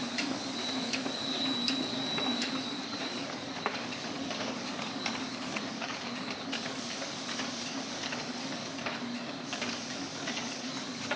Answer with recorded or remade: remade